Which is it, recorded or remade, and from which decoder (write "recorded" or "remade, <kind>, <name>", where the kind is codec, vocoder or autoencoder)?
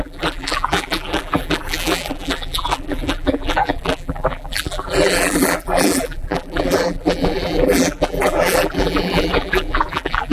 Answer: remade, vocoder, BigVGAN v2